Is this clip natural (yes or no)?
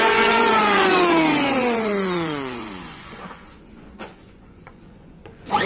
no